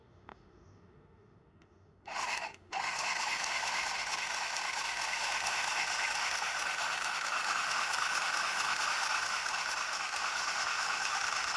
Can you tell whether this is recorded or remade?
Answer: remade